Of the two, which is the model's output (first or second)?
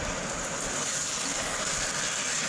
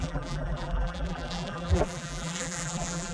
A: second